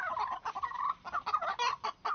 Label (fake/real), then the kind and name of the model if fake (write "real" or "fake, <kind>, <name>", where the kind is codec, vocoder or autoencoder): real